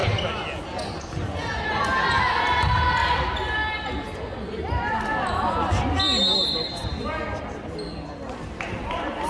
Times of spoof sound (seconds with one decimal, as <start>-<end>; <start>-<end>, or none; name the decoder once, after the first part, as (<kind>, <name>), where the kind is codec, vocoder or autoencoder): none